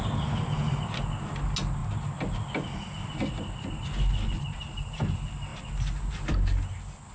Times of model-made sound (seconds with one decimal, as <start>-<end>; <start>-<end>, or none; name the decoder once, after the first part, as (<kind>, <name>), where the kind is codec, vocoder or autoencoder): none